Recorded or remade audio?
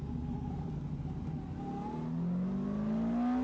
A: recorded